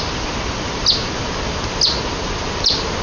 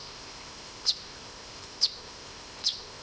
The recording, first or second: first